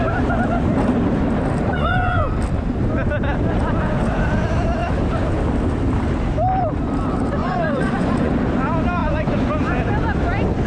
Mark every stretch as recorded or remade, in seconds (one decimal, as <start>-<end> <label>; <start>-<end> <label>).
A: 0.0-1.7 recorded; 1.7-2.2 remade; 2.2-7.4 recorded; 7.4-8.3 remade; 8.3-9.0 recorded; 9.0-9.5 remade; 9.5-10.7 recorded